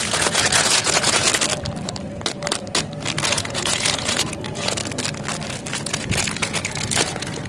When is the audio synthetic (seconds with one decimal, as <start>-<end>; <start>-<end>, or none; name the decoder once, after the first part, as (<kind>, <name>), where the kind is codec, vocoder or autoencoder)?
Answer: 0.0-1.3 (vocoder, Vocos); 3.2-4.8; 5.7-7.5